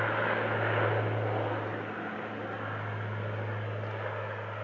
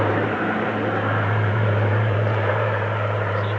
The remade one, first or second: second